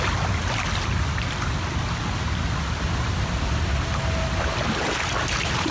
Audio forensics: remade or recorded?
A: recorded